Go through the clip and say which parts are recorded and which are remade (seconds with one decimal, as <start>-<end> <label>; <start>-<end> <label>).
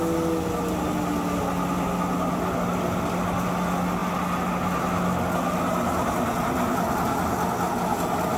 0.0-8.4 recorded